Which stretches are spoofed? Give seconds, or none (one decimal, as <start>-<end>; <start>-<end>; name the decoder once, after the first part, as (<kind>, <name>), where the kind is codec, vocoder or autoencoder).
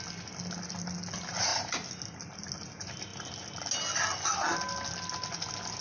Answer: none